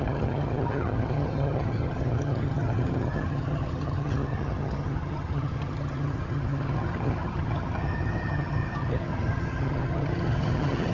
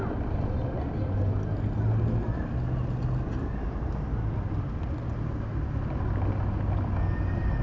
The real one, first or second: second